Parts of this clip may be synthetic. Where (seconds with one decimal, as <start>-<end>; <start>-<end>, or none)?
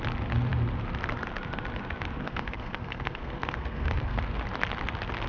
2.2-4.2